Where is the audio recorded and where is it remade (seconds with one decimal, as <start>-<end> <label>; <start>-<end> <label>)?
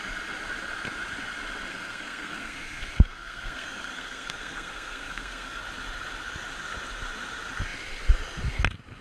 0.0-1.7 recorded; 1.7-5.6 remade; 5.6-9.0 recorded